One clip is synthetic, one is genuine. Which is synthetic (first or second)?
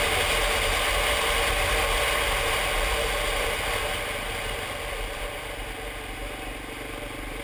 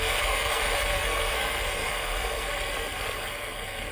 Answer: second